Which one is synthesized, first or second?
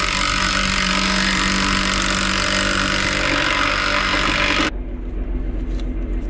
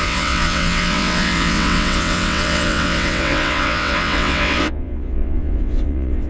second